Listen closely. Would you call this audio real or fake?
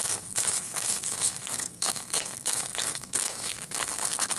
fake